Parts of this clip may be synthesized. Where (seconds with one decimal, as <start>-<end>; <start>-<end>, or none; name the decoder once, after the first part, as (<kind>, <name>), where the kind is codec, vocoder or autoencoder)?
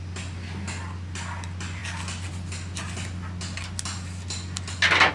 none